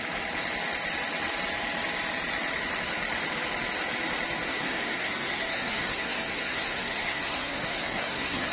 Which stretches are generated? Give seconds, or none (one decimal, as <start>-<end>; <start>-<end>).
4.5-8.5